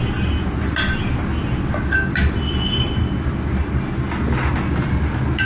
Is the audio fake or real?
real